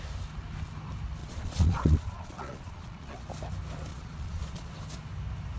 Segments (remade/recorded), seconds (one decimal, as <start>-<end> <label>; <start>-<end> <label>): 0.0-1.2 recorded; 1.2-3.2 remade; 3.2-3.9 recorded; 3.9-4.7 remade; 4.7-5.6 recorded